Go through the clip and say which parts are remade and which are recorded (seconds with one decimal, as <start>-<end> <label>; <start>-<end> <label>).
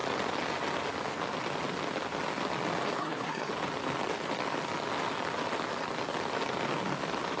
0.0-3.0 recorded; 3.0-3.5 remade; 3.5-7.4 recorded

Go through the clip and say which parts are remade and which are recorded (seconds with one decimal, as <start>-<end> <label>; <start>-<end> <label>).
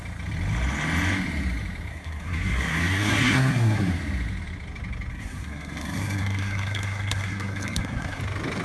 0.0-1.9 recorded; 1.9-3.9 remade; 3.9-5.1 recorded; 5.1-8.2 remade; 8.2-8.6 recorded